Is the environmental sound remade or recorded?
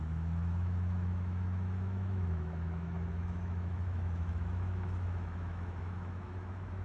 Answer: remade